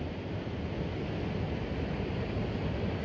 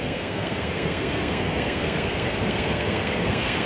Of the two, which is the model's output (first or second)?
second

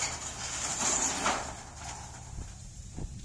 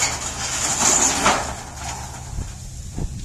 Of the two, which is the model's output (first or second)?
first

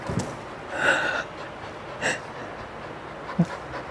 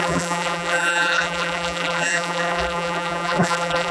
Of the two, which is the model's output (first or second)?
second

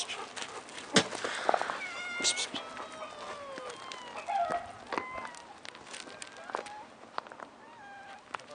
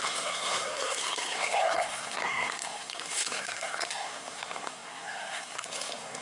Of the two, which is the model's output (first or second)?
second